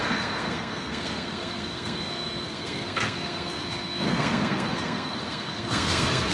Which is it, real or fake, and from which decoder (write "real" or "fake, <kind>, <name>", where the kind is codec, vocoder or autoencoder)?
fake, codec, SNAC